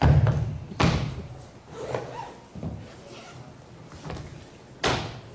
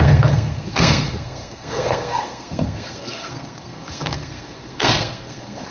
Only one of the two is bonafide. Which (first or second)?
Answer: first